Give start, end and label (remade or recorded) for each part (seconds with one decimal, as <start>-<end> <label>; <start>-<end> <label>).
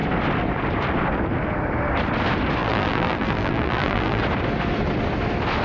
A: 0.0-2.6 recorded; 2.6-4.2 remade; 4.2-5.6 recorded